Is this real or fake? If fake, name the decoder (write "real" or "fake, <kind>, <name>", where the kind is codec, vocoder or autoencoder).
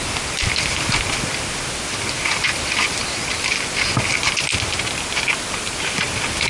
real